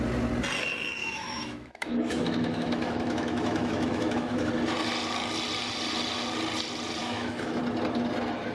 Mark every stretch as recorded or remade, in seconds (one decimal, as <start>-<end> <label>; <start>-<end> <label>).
0.0-1.0 recorded; 1.0-4.5 remade; 4.5-7.0 recorded; 7.0-7.6 remade; 7.6-8.5 recorded